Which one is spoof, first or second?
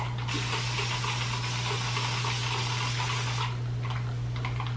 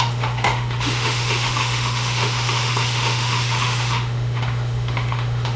second